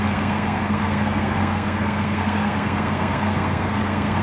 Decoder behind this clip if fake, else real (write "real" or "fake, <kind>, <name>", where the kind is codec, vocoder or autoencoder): fake, codec, SNAC